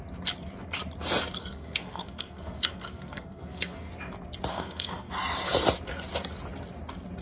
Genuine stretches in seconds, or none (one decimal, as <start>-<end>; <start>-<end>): 0.0-1.4; 3.9-4.5; 5.1-7.2